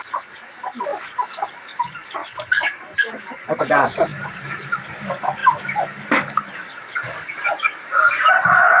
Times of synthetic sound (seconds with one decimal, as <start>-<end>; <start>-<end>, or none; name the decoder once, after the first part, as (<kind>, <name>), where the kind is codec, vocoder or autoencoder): 0.0-8.8 (codec, DAC)